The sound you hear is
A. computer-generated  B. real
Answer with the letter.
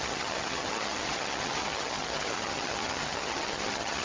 A